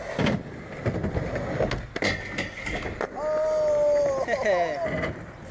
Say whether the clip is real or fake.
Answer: real